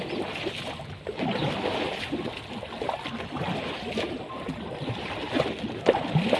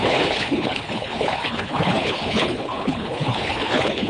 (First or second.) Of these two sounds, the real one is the first